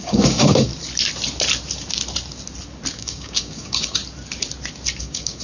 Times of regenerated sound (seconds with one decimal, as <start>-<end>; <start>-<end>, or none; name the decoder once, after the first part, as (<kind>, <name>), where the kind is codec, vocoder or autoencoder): 0.0-0.7 (codec, DAC); 2.9-4.0; 5.0-5.4